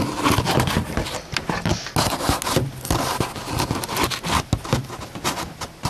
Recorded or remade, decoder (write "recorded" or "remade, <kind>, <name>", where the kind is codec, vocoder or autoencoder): recorded